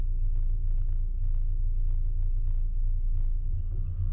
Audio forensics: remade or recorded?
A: recorded